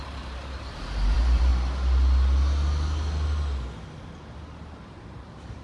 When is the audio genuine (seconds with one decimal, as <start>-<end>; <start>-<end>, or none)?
1.5-4.8